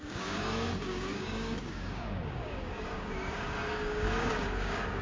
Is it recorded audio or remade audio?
remade